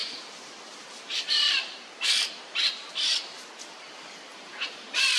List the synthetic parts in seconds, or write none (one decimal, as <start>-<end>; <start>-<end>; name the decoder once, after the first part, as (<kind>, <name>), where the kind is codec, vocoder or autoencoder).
0.0-3.1 (vocoder, BigVGAN v2); 4.3-5.2